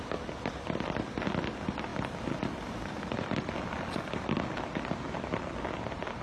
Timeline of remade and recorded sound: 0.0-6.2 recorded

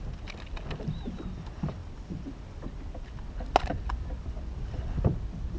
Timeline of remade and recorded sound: 0.0-5.6 recorded

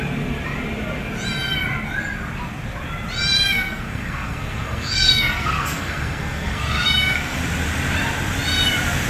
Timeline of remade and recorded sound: 0.0-3.5 recorded; 3.5-7.4 remade; 7.4-9.1 recorded

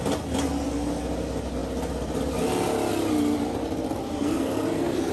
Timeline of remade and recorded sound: 0.0-4.0 recorded; 4.0-5.1 remade

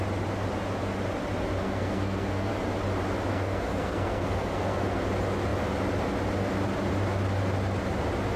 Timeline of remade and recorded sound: 0.0-1.6 recorded; 1.6-2.5 remade; 2.5-3.3 recorded; 3.3-5.0 remade; 5.0-8.4 recorded

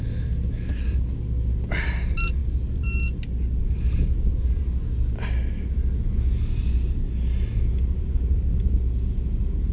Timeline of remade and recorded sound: 0.0-9.7 recorded

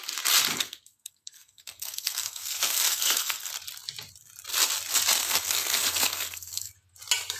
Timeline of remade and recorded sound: 0.0-0.5 recorded; 0.5-3.5 remade; 3.5-5.2 recorded; 5.2-6.7 remade; 6.7-7.4 recorded

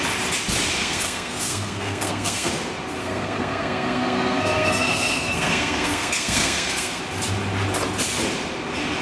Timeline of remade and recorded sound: 0.0-0.8 recorded; 0.8-2.5 remade; 2.5-3.0 recorded; 3.0-7.0 remade; 7.0-9.0 recorded